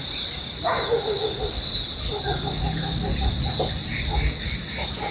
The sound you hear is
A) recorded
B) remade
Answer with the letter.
A